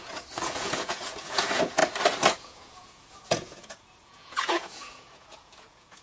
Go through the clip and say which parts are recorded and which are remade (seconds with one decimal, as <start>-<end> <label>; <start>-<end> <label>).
0.0-1.8 remade; 1.8-2.3 recorded; 2.3-6.0 remade